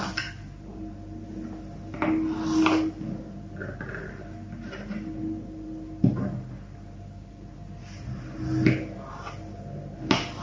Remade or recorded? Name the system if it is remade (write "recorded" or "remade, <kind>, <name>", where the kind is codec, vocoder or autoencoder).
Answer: recorded